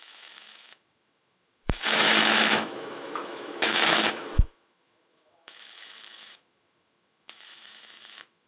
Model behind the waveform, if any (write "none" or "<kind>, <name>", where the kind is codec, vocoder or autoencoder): autoencoder, DAC-VAE